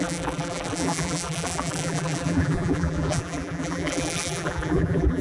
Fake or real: fake